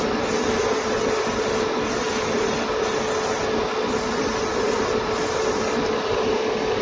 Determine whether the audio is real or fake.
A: real